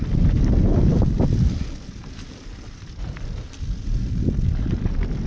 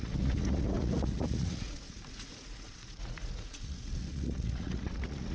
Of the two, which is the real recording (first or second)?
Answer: first